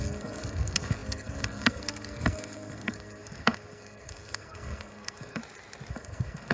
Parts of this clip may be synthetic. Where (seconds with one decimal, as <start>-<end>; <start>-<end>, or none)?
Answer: 0.0-5.4; 5.9-6.5